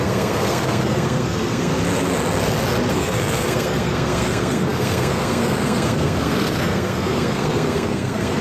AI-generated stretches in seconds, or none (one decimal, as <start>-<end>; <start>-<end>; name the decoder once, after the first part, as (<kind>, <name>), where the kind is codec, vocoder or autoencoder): 0.0-1.7 (codec, SNAC); 2.9-8.4